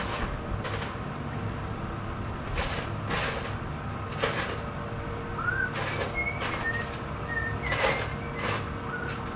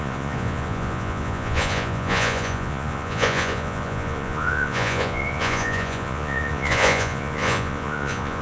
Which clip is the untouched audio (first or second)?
first